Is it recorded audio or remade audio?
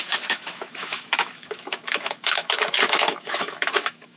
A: remade